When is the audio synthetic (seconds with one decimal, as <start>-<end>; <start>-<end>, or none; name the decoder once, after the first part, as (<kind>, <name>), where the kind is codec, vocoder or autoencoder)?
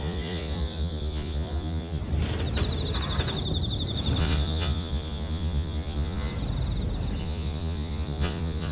0.0-2.0 (vocoder, Vocos); 4.2-6.3; 7.2-8.7